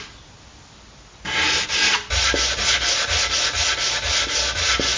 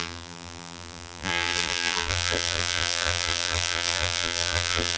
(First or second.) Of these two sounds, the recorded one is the first